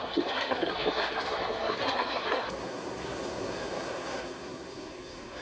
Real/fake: fake